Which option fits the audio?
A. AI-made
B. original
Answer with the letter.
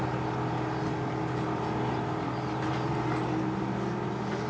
B